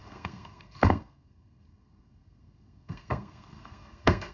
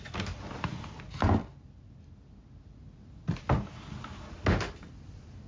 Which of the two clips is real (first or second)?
second